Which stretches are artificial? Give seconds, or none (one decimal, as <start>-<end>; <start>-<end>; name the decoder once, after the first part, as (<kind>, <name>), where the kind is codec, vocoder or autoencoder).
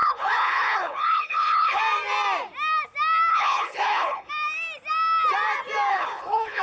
0.0-1.8 (codec, HILCodec); 3.3-4.3; 5.9-6.6